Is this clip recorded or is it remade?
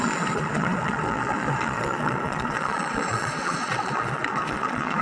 remade